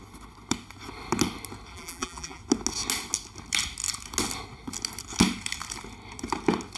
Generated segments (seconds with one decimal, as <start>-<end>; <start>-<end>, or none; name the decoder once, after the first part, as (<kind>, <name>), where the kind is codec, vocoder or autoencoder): 1.7-2.4 (vocoder, BigVGAN v2)